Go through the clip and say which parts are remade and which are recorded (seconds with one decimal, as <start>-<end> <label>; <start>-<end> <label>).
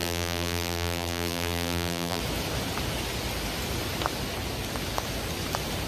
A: 0.0-2.2 remade; 2.2-5.9 recorded